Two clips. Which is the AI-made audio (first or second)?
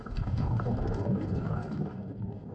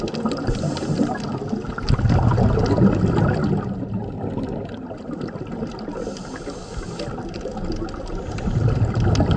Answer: first